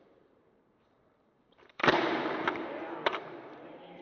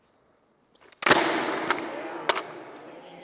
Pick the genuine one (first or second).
second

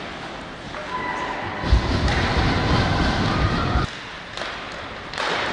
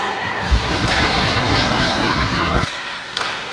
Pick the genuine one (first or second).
first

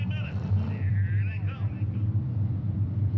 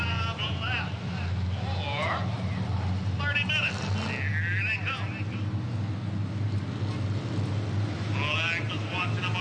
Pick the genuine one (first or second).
second